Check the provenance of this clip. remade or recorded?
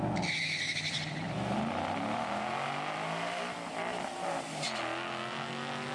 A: recorded